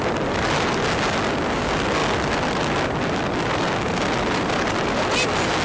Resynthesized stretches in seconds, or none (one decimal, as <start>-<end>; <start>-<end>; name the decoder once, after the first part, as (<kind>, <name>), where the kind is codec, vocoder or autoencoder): none